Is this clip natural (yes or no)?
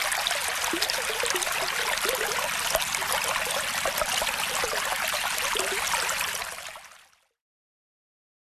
yes